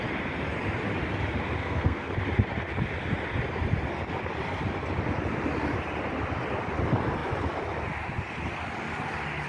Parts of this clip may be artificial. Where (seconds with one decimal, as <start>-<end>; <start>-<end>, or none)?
1.6-2.1